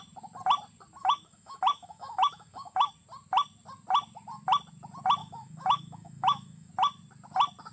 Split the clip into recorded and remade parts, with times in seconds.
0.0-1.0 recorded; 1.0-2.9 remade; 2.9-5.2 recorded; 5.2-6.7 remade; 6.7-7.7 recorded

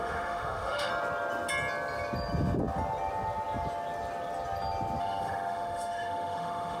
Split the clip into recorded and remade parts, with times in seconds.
0.0-0.9 remade; 0.9-5.0 recorded; 5.0-6.8 remade

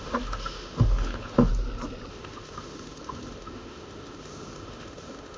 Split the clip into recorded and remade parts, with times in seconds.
0.0-1.5 remade; 1.5-2.1 recorded; 2.1-5.4 remade

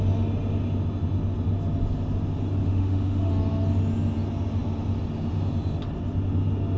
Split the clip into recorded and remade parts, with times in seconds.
0.0-2.6 recorded; 2.6-3.3 remade; 3.3-6.8 recorded

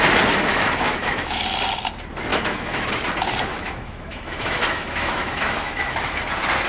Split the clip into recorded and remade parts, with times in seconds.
0.0-0.5 recorded; 0.5-1.4 remade; 1.4-2.3 recorded; 2.3-2.9 remade; 2.9-3.5 recorded; 3.5-6.2 remade; 6.2-6.7 recorded

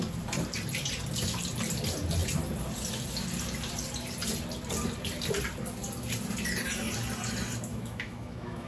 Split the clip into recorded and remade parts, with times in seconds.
0.0-7.7 recorded; 7.7-8.7 remade